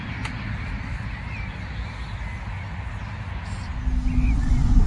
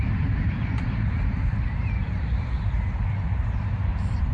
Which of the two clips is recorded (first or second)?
first